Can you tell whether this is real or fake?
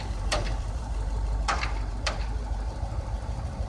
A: fake